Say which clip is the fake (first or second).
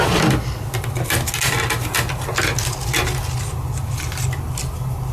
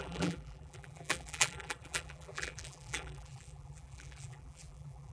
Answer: second